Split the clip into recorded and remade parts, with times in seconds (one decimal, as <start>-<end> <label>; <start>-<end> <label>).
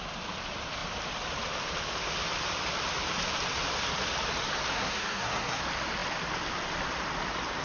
0.0-4.7 recorded; 4.7-5.6 remade; 5.6-7.6 recorded